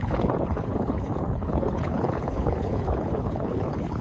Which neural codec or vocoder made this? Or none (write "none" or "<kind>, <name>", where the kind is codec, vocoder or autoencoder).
codec, HILCodec